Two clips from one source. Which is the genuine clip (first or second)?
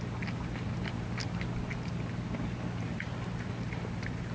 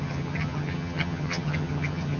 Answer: first